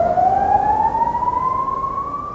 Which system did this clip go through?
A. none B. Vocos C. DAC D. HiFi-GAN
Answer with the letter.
A